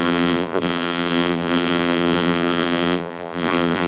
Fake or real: fake